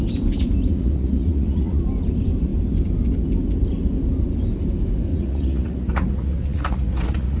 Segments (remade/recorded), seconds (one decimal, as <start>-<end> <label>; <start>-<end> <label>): 0.0-0.7 recorded; 0.7-1.8 remade; 1.8-5.1 recorded; 5.1-7.4 remade